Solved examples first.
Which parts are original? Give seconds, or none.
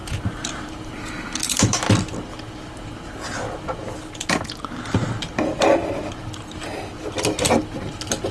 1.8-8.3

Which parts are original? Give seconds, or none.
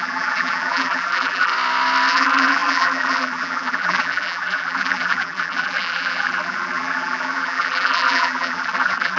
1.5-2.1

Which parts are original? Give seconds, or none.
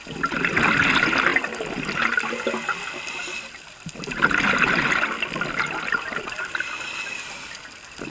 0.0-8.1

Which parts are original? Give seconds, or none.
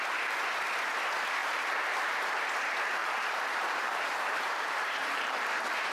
0.0-1.4; 2.4-3.0; 5.5-5.9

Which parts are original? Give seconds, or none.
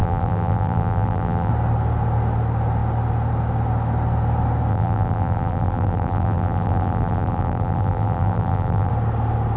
1.5-4.7; 8.9-9.6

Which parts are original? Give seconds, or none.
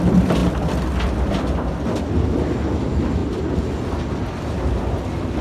0.0-5.4